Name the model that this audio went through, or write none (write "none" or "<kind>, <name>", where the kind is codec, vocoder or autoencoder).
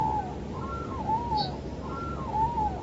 none